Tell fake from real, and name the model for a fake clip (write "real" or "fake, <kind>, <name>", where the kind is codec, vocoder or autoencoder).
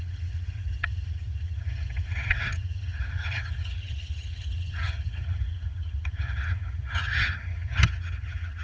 fake, vocoder, HiFi-GAN